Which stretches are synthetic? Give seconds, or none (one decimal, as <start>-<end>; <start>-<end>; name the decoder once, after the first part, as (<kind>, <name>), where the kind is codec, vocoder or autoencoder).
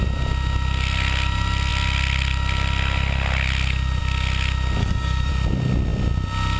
4.8-5.3 (codec, DAC)